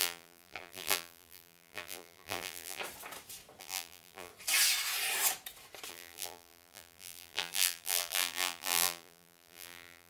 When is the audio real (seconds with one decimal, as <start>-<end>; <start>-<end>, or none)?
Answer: 2.8-3.6; 4.3-5.9